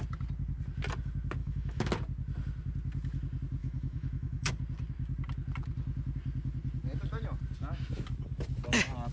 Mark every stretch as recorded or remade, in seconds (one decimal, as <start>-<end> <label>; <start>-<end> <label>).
0.0-1.4 recorded; 1.4-1.9 remade; 1.9-3.6 recorded; 3.6-4.5 remade; 4.5-9.1 recorded